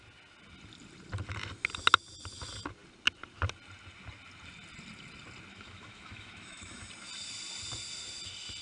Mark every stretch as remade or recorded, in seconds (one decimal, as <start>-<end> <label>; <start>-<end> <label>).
0.0-5.5 recorded; 5.5-6.9 remade; 6.9-8.6 recorded